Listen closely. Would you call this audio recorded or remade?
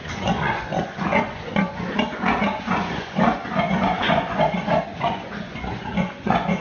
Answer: remade